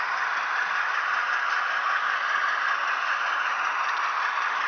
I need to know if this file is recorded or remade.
recorded